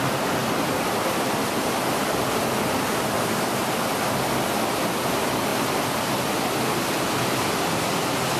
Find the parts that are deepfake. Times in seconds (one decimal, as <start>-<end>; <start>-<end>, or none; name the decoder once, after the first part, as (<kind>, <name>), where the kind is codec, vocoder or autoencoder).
none